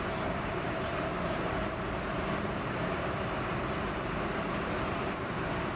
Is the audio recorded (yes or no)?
no